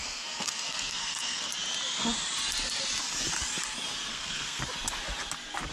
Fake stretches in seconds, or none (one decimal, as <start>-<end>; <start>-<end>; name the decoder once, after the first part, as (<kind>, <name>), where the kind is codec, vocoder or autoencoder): 0.0-1.5 (codec, SNAC); 4.1-4.6